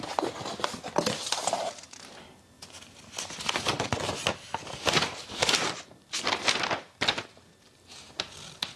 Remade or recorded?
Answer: recorded